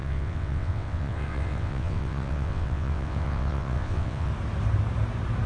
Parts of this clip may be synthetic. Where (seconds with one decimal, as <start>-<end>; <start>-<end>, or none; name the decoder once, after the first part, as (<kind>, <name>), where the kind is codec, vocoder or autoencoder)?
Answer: 0.0-4.3 (vocoder, WaveNeXt)